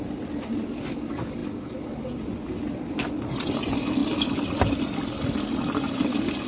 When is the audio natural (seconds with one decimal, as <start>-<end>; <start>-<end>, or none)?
0.0-6.5

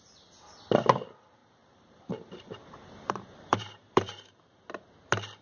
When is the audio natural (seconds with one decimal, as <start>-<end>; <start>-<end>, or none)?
0.0-1.4; 4.6-5.4

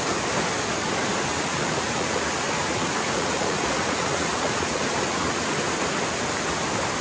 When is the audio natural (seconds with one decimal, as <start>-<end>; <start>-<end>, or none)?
0.0-1.3; 5.5-7.0